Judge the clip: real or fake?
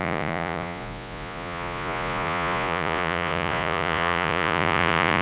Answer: fake